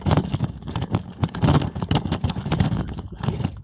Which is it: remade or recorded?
remade